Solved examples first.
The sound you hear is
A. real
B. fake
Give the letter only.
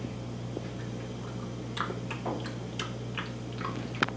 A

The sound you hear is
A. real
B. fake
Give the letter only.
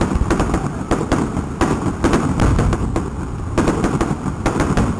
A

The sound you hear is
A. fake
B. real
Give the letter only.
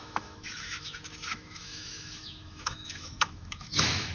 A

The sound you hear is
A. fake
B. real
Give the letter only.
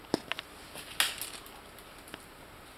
B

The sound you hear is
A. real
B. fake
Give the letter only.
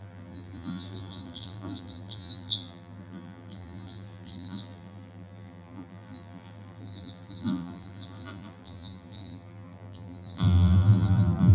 B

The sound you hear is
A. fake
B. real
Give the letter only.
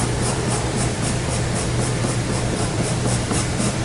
A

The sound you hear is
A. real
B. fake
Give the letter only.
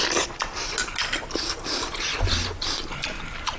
A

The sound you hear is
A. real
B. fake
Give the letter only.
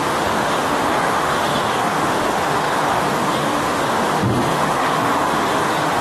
B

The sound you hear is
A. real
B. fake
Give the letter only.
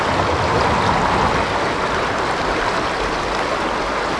A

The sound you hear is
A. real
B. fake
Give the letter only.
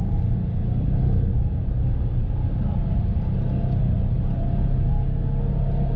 A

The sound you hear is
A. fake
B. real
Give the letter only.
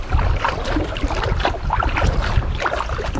B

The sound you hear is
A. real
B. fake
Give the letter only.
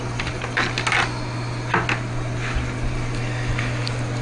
A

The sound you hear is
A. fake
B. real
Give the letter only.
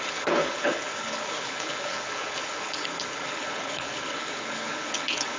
A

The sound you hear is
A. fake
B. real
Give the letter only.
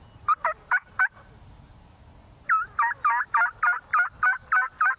B